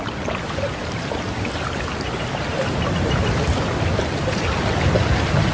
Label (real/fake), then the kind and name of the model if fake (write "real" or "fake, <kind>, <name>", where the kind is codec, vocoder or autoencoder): real